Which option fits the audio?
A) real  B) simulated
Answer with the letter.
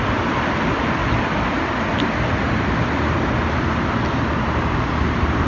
A